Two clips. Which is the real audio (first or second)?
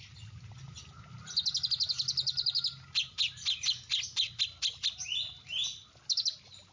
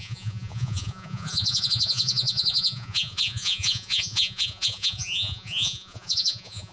first